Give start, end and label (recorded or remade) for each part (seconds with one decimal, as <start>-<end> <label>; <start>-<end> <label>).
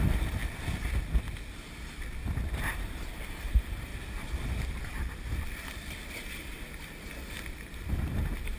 0.0-0.4 remade; 0.4-2.6 recorded; 2.6-3.9 remade; 3.9-5.3 recorded; 5.3-8.6 remade